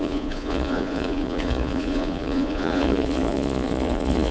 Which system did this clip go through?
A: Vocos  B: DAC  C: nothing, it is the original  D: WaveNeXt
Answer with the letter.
A